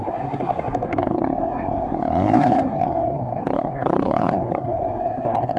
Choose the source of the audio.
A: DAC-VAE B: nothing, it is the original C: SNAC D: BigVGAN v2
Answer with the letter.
C